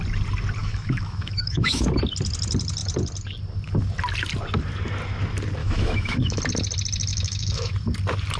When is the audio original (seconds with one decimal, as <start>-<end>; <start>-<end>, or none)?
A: 0.0-0.6; 1.9-5.6; 6.4-7.1; 7.7-8.4